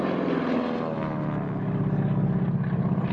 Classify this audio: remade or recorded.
recorded